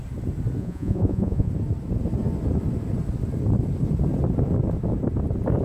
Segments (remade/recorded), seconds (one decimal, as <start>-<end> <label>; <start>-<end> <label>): 0.0-0.6 recorded; 0.6-1.5 remade; 1.5-5.6 recorded